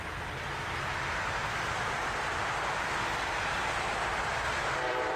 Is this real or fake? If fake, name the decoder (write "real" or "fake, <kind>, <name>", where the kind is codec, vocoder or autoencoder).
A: fake, vocoder, BigVGAN v2